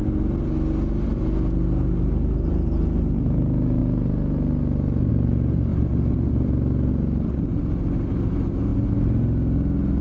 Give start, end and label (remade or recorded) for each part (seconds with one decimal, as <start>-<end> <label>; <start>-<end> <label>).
0.0-10.0 recorded